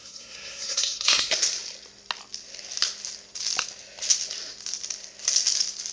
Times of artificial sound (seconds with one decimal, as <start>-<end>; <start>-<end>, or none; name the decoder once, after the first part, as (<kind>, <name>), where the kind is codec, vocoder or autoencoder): 0.0-1.3 (codec, SNAC)